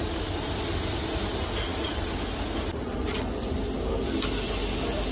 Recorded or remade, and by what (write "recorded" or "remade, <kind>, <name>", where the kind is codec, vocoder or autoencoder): recorded